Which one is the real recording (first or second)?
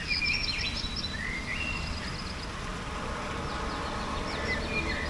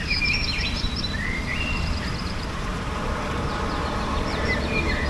first